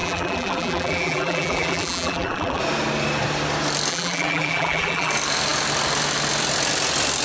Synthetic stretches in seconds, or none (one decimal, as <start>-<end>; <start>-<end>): 0.0-2.6; 3.9-5.1